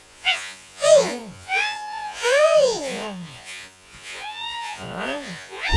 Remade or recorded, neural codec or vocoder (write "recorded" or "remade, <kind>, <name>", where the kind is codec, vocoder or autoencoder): remade, vocoder, Vocos